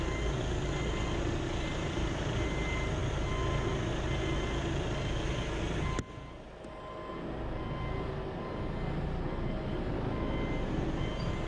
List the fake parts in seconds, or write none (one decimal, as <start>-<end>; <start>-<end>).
1.7-2.5

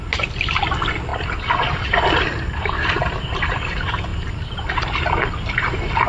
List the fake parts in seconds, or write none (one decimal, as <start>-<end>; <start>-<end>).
none

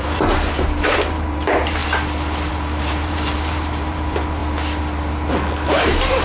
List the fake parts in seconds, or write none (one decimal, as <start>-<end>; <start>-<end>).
0.0-1.8; 2.5-4.4; 5.8-6.2

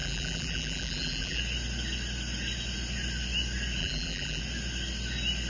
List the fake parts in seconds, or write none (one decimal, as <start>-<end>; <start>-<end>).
0.0-1.4; 3.8-4.4

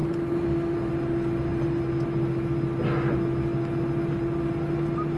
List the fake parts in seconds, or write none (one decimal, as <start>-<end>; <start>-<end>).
0.0-0.9

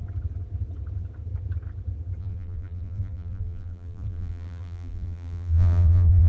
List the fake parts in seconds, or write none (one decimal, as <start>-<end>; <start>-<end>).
2.2-6.3

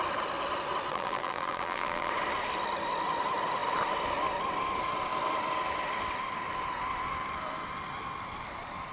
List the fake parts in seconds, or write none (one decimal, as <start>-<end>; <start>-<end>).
0.9-2.1

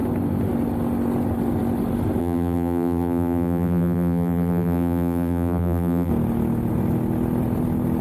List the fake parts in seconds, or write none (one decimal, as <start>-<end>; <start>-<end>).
2.2-6.1